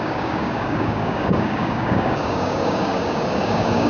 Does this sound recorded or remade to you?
remade